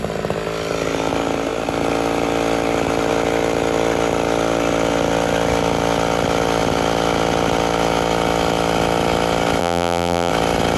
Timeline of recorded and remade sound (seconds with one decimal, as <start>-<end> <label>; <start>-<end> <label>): 0.0-9.6 recorded; 9.6-10.3 remade; 10.3-10.8 recorded